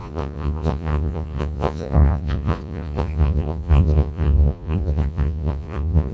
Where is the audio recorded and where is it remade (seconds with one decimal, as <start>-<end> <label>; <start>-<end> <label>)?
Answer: 0.0-6.1 remade